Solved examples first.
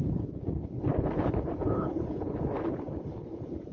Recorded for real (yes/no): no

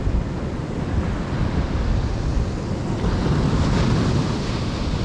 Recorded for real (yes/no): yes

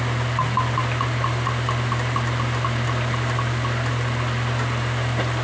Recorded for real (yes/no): yes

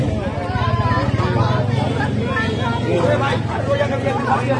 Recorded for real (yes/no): yes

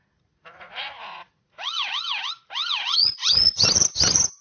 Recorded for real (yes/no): no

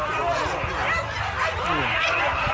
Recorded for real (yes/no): yes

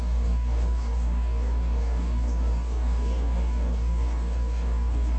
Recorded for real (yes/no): no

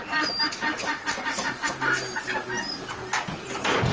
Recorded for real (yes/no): yes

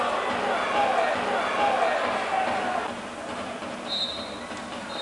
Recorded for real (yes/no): yes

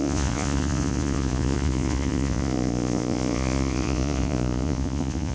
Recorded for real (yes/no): no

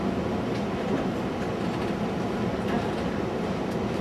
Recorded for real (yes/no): yes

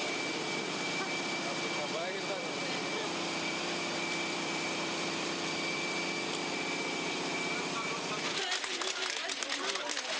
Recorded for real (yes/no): no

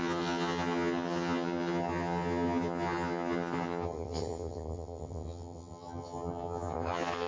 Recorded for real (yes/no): no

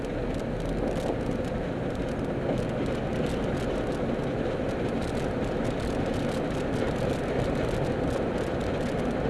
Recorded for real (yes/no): yes